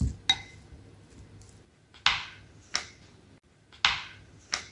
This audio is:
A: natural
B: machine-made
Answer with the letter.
A